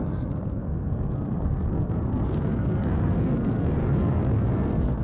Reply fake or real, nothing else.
fake